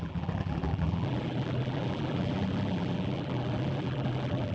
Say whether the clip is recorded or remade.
remade